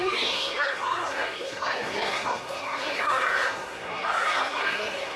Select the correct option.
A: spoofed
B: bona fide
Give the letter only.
A